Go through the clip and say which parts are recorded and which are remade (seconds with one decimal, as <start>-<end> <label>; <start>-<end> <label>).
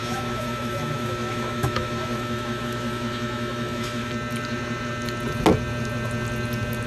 0.0-4.1 remade; 4.1-6.9 recorded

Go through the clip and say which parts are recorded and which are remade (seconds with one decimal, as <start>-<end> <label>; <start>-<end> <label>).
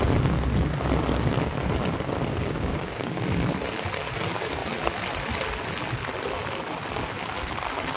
0.0-2.3 recorded; 2.3-3.2 remade; 3.2-8.0 recorded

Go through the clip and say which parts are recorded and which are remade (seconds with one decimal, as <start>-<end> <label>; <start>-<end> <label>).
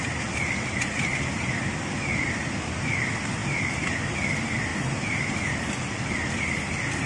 0.0-7.1 recorded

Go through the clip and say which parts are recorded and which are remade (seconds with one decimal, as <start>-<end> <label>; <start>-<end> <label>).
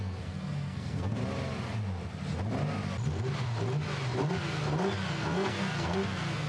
0.0-1.2 remade; 1.2-5.1 recorded; 5.1-6.5 remade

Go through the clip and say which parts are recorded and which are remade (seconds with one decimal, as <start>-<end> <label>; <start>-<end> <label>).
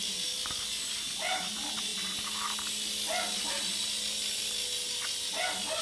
0.0-5.8 recorded